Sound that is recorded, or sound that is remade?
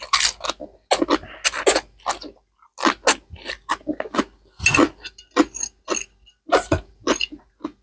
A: recorded